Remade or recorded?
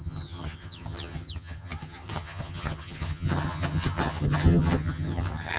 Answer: remade